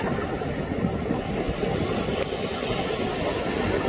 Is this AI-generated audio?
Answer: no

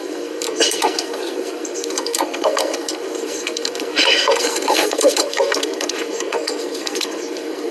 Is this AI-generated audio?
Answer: yes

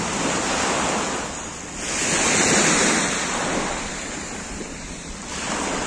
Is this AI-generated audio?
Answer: no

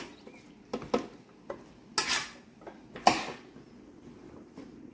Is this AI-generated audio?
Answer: no